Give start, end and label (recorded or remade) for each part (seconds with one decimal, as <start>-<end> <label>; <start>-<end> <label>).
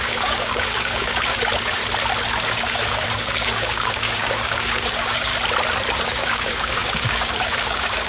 0.0-1.8 remade; 1.8-2.4 recorded; 2.4-5.3 remade; 5.3-6.0 recorded; 6.0-8.1 remade